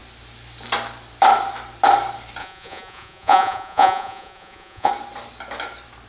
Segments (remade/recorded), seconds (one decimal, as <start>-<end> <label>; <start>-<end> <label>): 0.0-2.4 recorded; 2.4-4.9 remade; 4.9-6.1 recorded